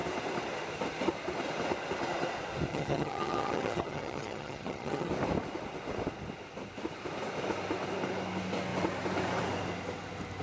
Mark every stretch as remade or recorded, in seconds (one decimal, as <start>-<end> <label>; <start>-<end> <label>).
0.0-2.7 recorded; 2.7-5.1 remade; 5.1-10.4 recorded